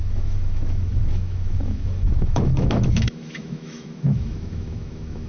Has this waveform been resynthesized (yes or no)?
yes